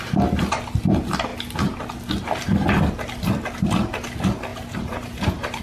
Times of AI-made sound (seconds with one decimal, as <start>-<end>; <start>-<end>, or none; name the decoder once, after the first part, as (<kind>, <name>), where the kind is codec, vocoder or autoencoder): 4.5-5.6 (vocoder, BigVGAN v2)